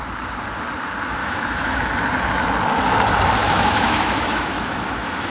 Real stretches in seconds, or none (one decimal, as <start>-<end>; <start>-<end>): 0.0-1.2; 1.8-3.4